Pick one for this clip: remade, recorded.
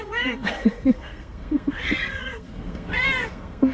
remade